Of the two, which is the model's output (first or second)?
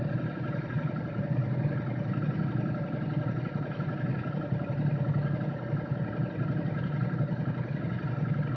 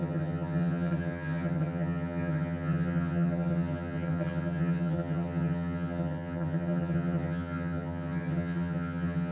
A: second